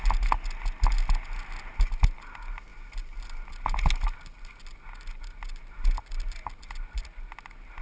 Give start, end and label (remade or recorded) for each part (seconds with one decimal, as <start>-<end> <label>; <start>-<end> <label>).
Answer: 0.0-7.8 recorded